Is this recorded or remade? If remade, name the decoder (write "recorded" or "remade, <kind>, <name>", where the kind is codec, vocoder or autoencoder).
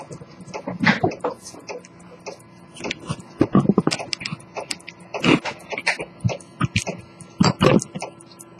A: recorded